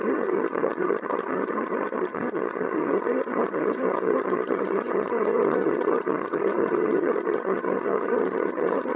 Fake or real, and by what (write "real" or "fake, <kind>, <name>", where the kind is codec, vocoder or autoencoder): fake, vocoder, HiFi-GAN